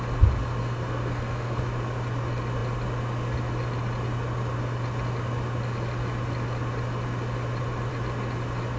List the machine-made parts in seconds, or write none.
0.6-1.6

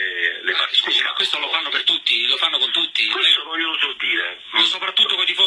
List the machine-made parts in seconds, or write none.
1.4-1.9